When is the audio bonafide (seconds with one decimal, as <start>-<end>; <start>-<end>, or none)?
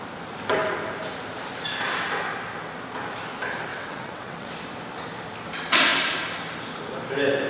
0.0-3.7; 4.5-7.5